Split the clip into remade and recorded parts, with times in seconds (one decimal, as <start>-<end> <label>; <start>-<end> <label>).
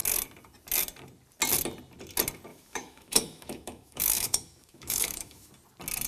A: 0.0-2.5 recorded; 2.5-5.5 remade; 5.5-6.1 recorded